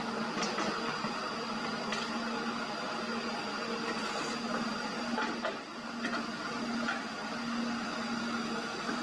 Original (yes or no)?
yes